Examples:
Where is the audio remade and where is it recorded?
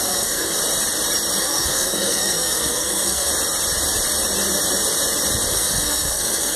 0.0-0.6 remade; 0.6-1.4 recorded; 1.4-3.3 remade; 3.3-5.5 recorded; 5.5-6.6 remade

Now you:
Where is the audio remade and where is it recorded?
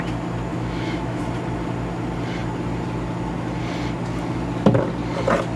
0.0-0.5 recorded; 0.5-1.2 remade; 1.2-5.6 recorded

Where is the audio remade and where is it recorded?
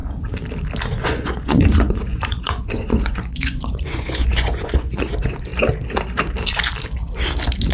0.0-1.0 recorded; 1.0-5.5 remade; 5.5-7.7 recorded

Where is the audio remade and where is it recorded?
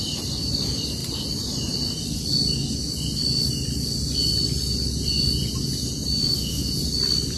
0.0-6.2 recorded; 6.2-6.7 remade; 6.7-7.4 recorded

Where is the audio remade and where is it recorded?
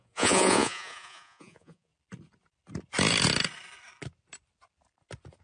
0.0-1.9 remade; 1.9-5.4 recorded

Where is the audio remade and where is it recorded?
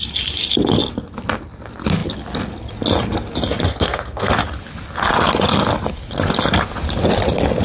0.0-3.7 recorded; 3.7-4.3 remade; 4.3-7.6 recorded